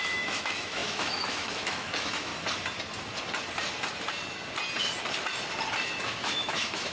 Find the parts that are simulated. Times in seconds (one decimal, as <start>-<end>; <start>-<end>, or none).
0.0-2.3; 6.0-6.9